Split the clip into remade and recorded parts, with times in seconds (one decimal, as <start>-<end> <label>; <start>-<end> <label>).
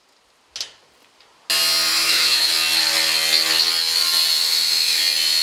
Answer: 0.0-1.9 recorded; 1.9-2.5 remade; 2.5-4.4 recorded; 4.4-5.0 remade; 5.0-5.4 recorded